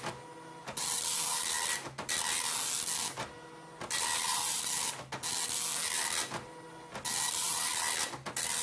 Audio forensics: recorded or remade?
recorded